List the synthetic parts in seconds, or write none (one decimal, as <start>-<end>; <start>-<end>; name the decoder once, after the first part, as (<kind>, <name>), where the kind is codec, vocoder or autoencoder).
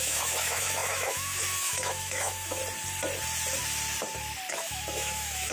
0.0-2.6 (autoencoder, DAC-VAE); 4.5-5.5